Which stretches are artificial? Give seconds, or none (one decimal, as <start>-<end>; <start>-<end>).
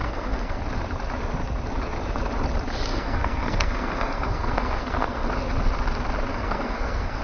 0.0-0.6; 2.9-5.3; 6.3-7.2